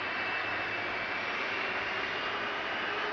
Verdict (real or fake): real